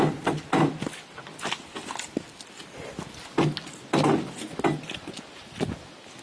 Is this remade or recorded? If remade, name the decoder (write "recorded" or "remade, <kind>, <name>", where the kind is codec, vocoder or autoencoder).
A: recorded